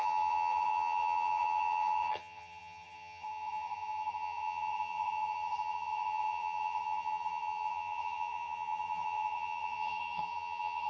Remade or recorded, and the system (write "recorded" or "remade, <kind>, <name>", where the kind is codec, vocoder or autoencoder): remade, vocoder, HiFi-GAN